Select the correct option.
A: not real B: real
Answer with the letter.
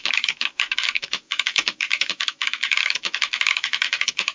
A